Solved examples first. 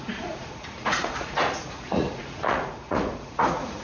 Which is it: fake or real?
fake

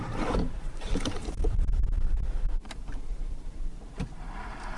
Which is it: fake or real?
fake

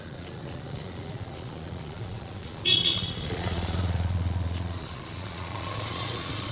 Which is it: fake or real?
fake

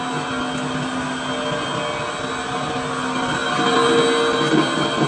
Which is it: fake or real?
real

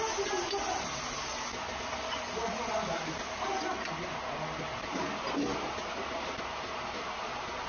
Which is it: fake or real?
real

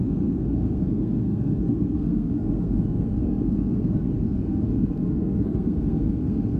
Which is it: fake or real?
fake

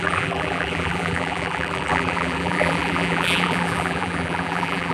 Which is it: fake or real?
fake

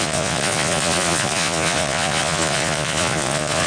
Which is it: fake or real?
fake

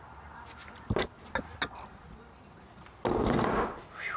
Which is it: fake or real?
real